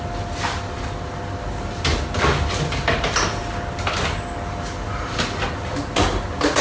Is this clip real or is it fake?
real